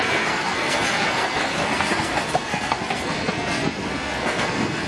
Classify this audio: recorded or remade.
remade